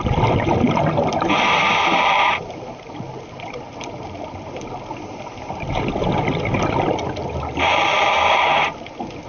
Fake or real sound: real